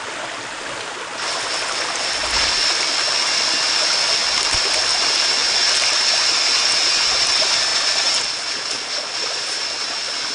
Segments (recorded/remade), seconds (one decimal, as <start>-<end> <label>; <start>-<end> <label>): 0.0-10.3 recorded